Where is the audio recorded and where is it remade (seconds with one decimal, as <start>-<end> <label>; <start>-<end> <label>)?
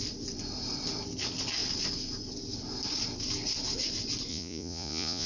0.0-4.3 recorded; 4.3-5.3 remade